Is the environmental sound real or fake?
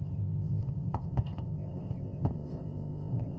fake